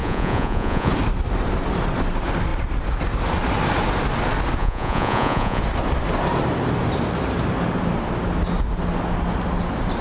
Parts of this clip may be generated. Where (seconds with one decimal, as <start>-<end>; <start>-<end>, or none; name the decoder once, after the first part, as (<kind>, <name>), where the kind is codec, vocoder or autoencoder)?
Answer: 0.0-0.9 (vocoder, Vocos); 4.6-5.6